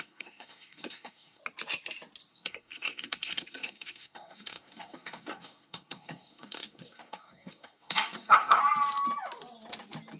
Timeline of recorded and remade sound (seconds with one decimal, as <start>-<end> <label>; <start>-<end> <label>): 0.0-1.4 remade; 1.4-2.3 recorded; 2.3-8.6 remade; 8.6-10.2 recorded